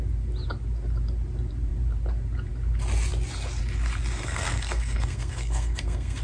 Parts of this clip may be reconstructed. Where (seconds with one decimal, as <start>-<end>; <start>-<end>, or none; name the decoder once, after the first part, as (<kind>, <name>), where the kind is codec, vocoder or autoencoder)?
4.2-6.2 (codec, SNAC)